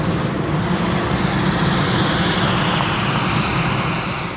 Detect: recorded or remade recorded